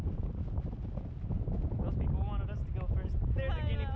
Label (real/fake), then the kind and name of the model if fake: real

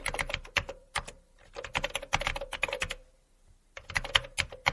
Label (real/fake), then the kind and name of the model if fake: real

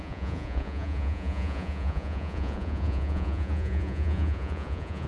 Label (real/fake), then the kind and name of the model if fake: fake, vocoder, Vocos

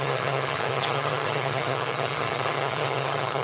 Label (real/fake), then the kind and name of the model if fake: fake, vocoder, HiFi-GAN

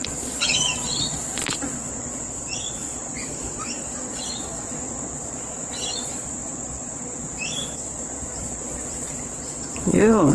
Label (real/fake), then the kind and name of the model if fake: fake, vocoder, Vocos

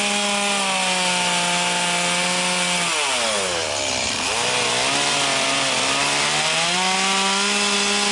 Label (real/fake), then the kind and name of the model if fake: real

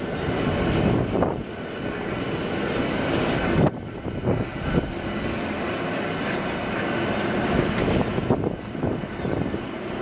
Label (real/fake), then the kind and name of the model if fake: real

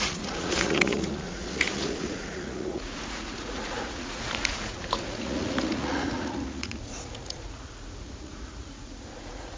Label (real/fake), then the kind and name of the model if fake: fake, vocoder, Vocos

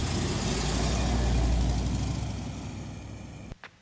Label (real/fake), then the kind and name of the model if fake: real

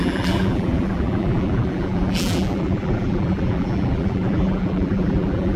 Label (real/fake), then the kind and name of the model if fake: fake, vocoder, BigVGAN v2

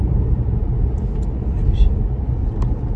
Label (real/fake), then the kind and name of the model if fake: real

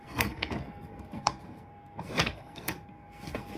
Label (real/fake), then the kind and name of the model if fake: fake, codec, SNAC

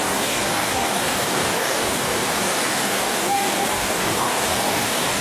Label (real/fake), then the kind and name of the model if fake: fake, codec, DAC